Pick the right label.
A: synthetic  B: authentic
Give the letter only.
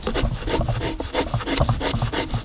B